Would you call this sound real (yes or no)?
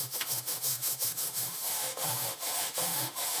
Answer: no